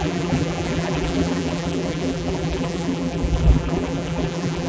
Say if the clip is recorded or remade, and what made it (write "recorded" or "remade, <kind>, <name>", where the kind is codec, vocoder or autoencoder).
remade, vocoder, BigVGAN v2